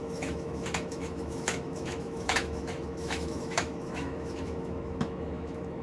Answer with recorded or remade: remade